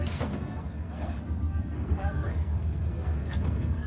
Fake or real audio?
fake